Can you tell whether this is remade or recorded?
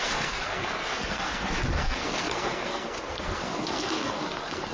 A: remade